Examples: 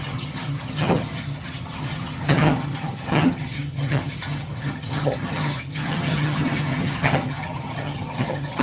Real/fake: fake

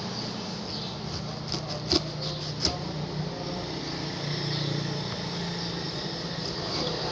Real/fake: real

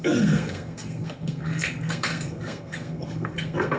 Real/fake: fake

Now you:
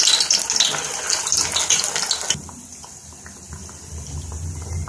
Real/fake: real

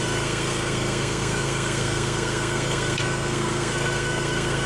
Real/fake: fake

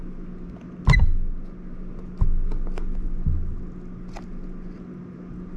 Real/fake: real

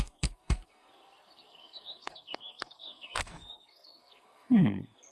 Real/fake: fake